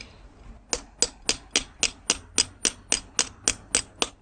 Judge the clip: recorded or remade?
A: recorded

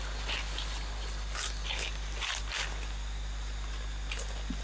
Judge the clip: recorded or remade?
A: recorded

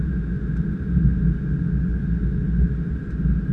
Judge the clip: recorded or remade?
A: recorded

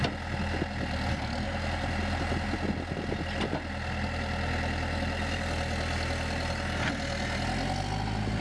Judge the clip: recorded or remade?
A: recorded